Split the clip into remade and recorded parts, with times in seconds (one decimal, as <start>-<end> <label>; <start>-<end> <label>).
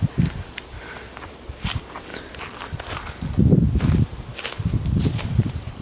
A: 0.0-2.1 remade; 2.1-5.0 recorded; 5.0-5.8 remade